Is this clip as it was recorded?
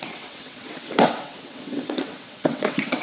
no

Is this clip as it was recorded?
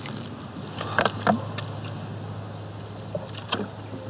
yes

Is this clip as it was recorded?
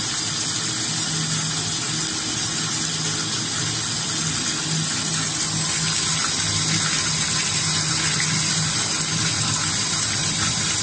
yes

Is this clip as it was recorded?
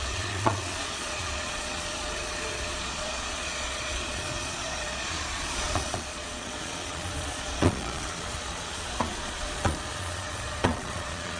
no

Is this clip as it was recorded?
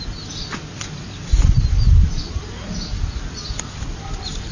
yes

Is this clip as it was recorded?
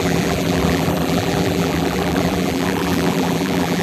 no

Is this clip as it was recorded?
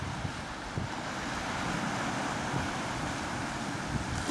yes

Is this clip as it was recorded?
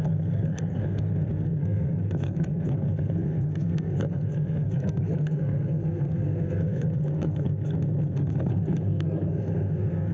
no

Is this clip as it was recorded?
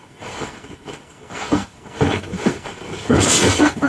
no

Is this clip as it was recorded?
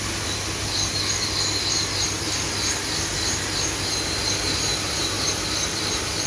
yes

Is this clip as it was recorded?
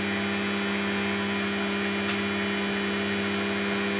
yes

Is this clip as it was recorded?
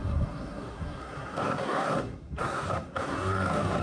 no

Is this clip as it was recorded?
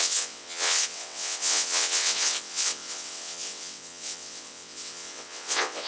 no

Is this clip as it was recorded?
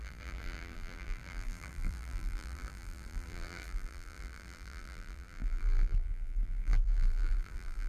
no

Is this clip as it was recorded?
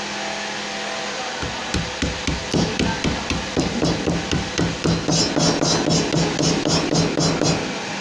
yes